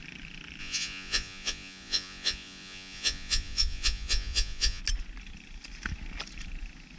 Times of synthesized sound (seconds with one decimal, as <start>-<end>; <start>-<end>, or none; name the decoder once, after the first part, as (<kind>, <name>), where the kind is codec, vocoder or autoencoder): 0.6-4.8 (vocoder, Vocos)